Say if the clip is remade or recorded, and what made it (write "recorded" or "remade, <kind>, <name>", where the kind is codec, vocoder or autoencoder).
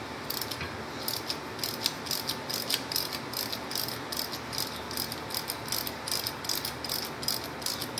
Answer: recorded